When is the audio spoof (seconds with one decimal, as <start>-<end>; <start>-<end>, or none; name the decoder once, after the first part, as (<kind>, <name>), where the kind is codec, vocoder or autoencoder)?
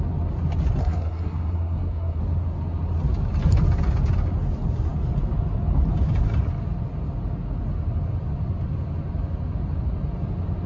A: 0.8-2.2 (codec, SNAC)